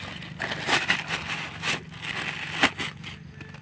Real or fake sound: real